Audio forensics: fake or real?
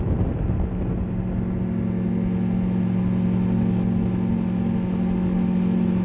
real